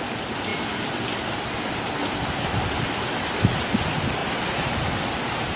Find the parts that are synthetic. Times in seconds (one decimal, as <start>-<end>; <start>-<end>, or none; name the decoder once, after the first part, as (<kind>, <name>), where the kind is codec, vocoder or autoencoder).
4.2-5.6 (vocoder, BigVGAN v2)